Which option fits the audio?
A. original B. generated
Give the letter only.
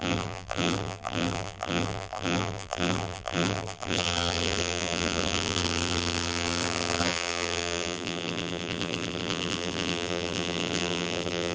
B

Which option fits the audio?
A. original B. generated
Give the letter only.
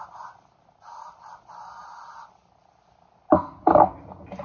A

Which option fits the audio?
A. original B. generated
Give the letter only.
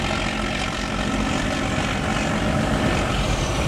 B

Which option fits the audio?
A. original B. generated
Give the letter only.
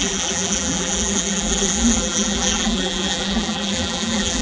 B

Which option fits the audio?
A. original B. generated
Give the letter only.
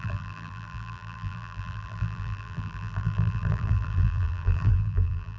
B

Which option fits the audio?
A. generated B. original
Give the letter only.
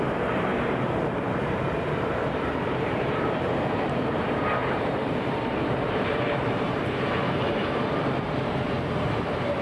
A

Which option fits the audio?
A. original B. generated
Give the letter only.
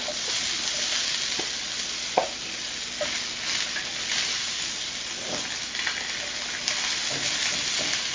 A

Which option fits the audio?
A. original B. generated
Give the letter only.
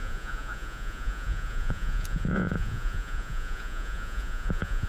B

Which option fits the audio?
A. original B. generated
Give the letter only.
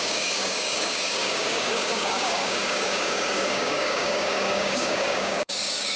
B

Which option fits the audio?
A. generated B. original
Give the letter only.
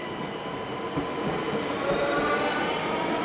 B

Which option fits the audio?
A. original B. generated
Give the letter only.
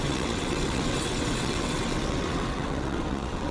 B